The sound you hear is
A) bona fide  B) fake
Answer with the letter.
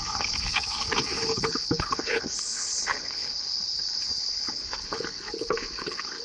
B